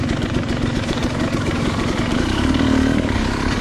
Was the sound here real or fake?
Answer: fake